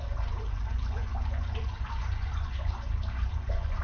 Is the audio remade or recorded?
remade